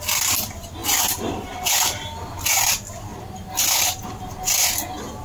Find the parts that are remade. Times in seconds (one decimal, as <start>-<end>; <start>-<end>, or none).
none